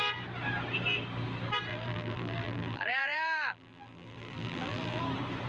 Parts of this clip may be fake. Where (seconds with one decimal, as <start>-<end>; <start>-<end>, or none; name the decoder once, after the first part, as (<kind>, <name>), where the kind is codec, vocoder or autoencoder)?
1.7-5.0 (vocoder, BigVGAN v2)